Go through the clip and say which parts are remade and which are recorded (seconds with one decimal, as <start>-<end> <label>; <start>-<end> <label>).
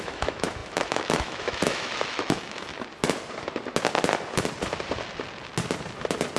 0.0-2.7 remade; 2.7-6.4 recorded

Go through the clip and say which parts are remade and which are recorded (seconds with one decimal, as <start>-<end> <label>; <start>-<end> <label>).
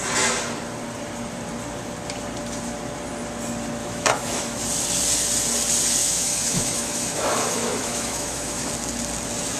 0.0-3.8 recorded; 3.8-4.6 remade; 4.6-6.0 recorded; 6.0-8.7 remade; 8.7-9.6 recorded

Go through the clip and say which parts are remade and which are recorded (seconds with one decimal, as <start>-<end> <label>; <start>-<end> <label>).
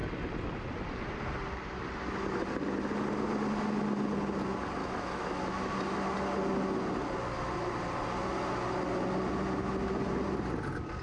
0.0-4.8 recorded; 4.8-5.7 remade; 5.7-11.0 recorded